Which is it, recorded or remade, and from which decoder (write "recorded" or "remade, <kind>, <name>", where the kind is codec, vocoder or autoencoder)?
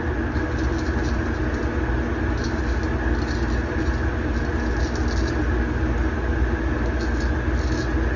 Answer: recorded